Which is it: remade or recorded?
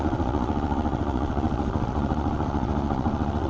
remade